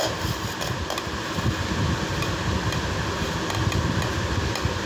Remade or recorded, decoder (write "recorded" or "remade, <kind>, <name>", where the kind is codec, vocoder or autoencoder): recorded